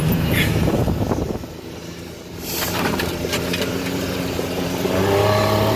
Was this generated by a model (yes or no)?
yes